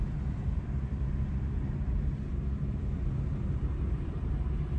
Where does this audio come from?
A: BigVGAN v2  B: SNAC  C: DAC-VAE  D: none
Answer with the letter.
A